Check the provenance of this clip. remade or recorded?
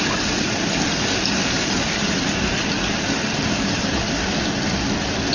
recorded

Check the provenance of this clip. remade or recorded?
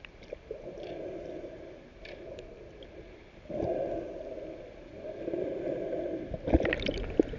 recorded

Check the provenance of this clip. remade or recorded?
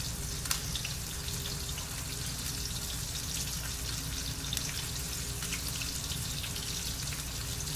recorded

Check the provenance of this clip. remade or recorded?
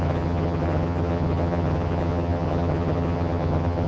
remade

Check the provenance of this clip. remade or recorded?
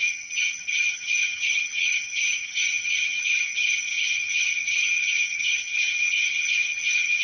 remade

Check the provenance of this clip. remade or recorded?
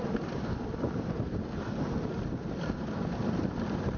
recorded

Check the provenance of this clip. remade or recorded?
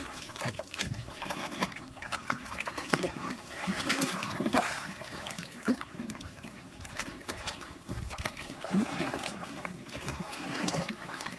remade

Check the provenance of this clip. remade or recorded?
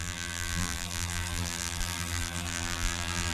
remade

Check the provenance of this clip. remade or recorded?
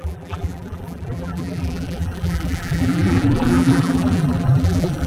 remade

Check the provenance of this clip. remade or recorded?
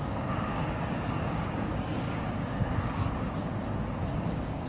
remade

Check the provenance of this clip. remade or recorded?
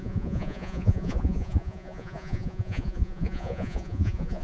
remade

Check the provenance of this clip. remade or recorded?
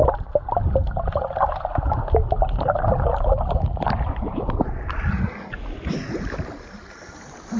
recorded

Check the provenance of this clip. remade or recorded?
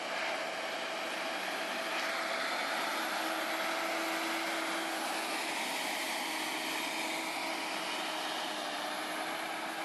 recorded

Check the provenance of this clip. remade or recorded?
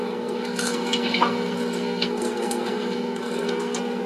remade